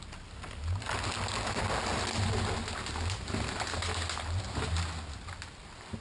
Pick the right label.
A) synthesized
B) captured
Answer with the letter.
B